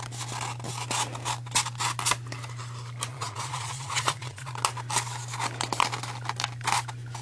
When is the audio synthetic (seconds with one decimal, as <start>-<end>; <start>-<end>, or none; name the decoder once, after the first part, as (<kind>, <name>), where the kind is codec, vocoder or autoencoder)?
3.1-4.5 (vocoder, Vocos)